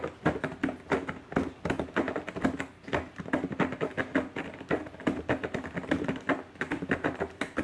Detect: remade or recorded recorded